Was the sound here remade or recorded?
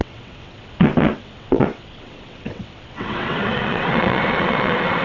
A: remade